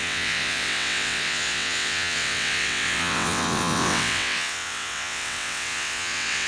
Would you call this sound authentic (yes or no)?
no